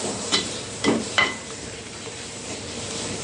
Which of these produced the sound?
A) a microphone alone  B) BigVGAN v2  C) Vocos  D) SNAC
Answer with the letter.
B